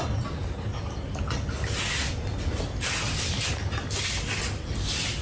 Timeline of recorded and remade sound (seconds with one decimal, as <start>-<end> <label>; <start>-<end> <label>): 0.0-5.2 recorded